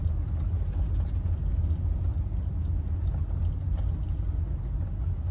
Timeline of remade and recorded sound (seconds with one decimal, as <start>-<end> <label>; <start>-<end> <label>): 0.0-5.3 recorded